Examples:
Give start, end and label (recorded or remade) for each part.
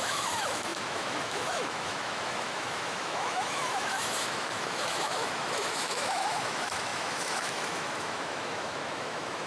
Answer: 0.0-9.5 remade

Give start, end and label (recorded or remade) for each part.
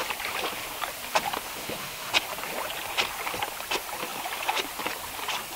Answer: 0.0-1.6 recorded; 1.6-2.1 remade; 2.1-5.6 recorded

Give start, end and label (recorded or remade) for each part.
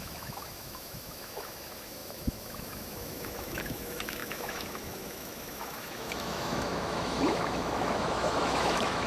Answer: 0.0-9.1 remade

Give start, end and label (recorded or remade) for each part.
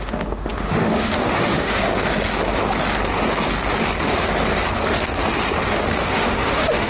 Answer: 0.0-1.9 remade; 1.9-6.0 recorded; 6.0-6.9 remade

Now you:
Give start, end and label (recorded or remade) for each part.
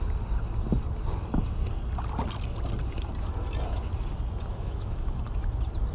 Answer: 0.0-4.5 recorded; 4.5-5.2 remade; 5.2-5.9 recorded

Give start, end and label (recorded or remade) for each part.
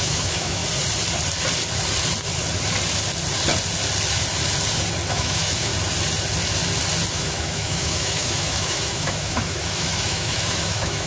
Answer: 0.0-0.6 remade; 0.6-5.1 recorded; 5.1-5.7 remade; 5.7-7.1 recorded; 7.1-11.1 remade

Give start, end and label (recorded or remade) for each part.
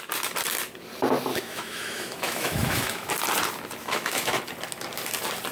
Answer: 0.0-1.3 recorded; 1.3-3.1 remade; 3.1-3.8 recorded; 3.8-4.4 remade; 4.4-5.5 recorded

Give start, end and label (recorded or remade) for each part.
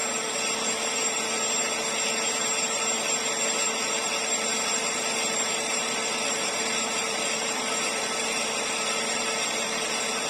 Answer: 0.0-10.3 recorded